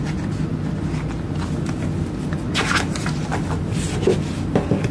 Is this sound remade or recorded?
recorded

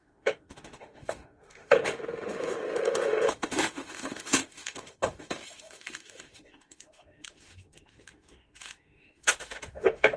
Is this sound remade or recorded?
remade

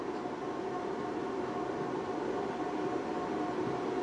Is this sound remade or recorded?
recorded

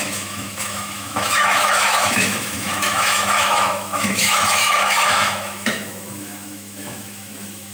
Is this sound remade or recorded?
remade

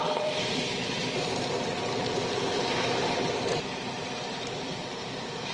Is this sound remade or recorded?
remade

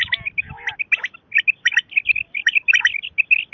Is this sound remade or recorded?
recorded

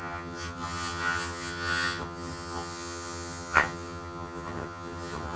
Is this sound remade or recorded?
remade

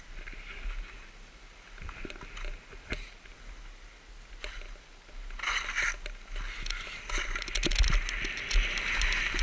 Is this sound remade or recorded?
recorded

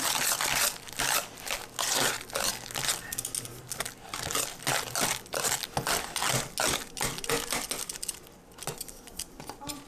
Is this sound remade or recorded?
recorded